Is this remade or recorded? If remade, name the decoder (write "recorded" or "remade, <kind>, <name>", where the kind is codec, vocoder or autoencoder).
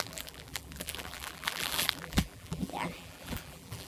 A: remade, vocoder, BigVGAN v2